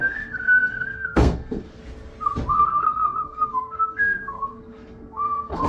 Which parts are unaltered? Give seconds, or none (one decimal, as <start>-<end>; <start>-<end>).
1.8-2.5